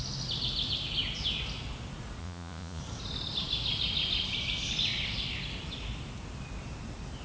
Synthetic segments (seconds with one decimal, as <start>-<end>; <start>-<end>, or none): 2.2-2.8